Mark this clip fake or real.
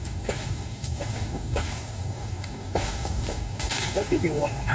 fake